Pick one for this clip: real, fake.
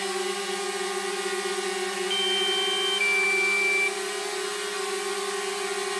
real